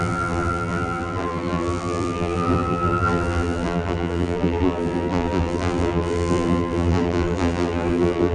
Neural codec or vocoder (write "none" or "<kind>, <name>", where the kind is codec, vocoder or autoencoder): vocoder, BigVGAN v2